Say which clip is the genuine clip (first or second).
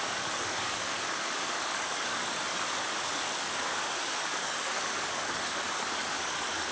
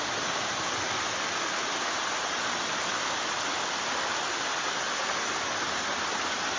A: second